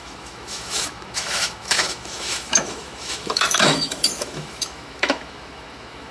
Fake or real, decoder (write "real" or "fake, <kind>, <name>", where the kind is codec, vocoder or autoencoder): fake, autoencoder, DAC-VAE